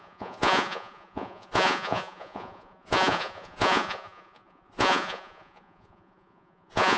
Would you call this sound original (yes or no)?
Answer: no